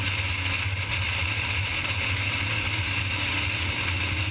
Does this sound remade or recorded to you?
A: recorded